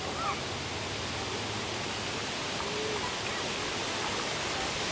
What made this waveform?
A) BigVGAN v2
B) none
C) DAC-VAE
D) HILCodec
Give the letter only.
B